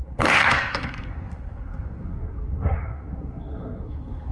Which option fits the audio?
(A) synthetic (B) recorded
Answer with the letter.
A